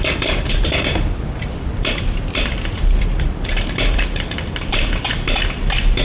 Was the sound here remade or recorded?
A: remade